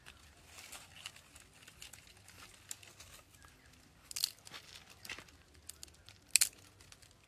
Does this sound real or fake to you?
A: real